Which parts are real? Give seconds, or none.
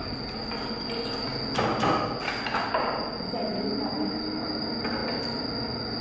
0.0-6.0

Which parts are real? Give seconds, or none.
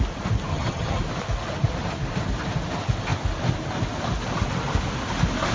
0.0-0.5; 1.0-5.5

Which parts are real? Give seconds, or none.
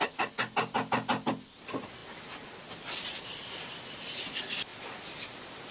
0.0-5.7